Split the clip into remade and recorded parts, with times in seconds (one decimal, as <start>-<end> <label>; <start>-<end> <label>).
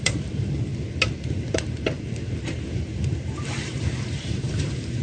0.0-0.7 remade; 0.7-1.3 recorded; 1.3-5.0 remade